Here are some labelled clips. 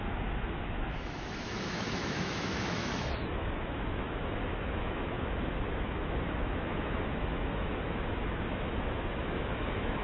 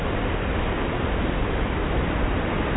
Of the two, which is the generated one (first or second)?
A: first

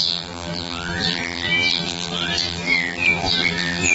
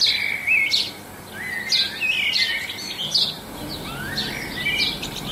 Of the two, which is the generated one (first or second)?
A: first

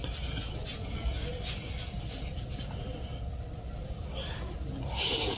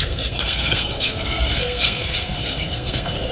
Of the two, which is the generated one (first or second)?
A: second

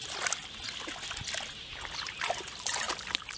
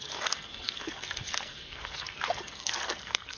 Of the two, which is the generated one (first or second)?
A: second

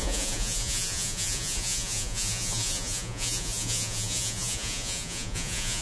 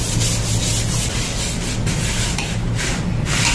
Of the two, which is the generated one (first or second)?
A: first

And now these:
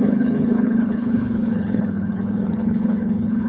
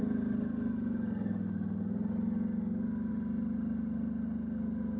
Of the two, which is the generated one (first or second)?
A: first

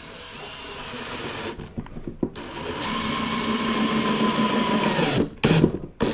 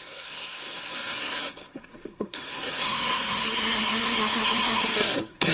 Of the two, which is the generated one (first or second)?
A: second